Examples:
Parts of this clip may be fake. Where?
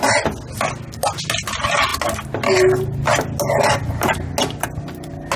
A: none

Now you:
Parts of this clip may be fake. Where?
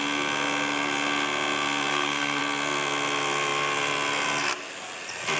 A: 1.9-2.4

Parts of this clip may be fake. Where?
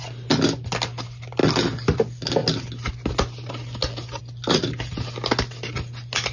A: none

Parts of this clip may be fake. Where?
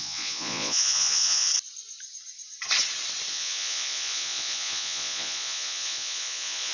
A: 0.0-1.5; 3.3-6.7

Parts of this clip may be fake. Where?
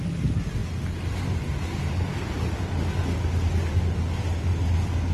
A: none